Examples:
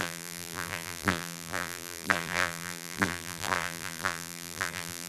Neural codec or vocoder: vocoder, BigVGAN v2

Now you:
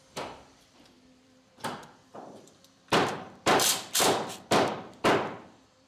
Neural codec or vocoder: vocoder, BigVGAN v2